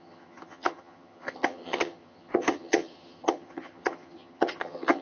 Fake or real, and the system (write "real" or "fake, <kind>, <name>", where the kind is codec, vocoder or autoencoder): fake, vocoder, HiFi-GAN